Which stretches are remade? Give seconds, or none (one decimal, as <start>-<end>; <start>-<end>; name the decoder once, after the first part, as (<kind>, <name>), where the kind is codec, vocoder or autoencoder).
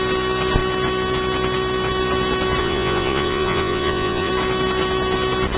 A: 2.6-4.3 (vocoder, Vocos)